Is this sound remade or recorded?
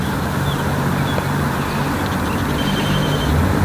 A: recorded